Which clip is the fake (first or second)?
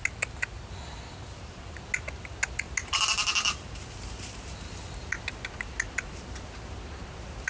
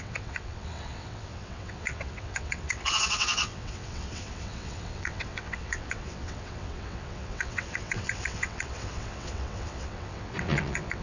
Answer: second